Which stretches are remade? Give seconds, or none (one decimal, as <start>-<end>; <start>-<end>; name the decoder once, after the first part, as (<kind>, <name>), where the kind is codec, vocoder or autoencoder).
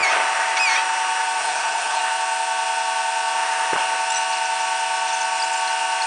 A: 1.4-2.0 (codec, HILCodec)